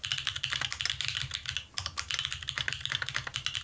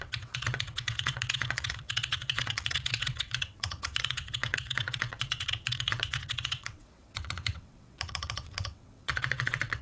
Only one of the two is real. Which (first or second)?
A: first